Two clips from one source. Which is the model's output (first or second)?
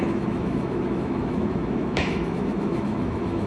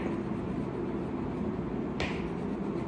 first